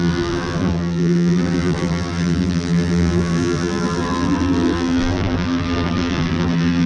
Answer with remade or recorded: remade